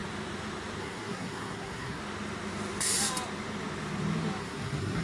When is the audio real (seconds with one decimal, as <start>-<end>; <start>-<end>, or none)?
0.0-0.8; 2.0-4.4